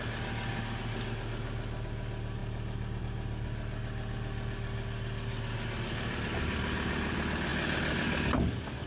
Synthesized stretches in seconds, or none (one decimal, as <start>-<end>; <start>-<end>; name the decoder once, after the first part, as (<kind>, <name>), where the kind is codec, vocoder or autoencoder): none